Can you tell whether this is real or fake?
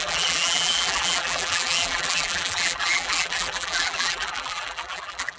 fake